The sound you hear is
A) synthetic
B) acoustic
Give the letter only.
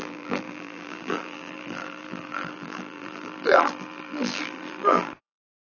A